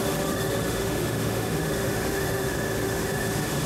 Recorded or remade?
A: remade